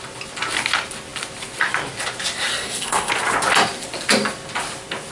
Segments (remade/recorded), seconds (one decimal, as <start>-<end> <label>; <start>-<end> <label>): 0.0-2.5 recorded; 2.5-3.1 remade; 3.1-5.1 recorded